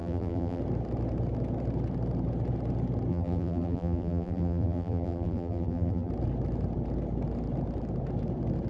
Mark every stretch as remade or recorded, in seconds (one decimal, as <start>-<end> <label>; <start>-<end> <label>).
0.0-0.6 remade; 0.6-3.1 recorded; 3.1-6.1 remade; 6.1-8.7 recorded

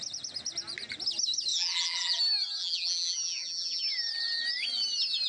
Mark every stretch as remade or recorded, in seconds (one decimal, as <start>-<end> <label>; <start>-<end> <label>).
0.0-1.5 recorded; 1.5-2.2 remade; 2.2-2.6 recorded; 2.6-3.8 remade; 3.8-5.3 recorded

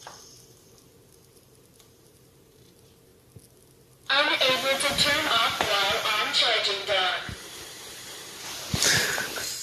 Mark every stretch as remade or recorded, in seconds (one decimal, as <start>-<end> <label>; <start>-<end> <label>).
0.0-3.1 remade; 3.1-5.3 recorded; 5.3-9.6 remade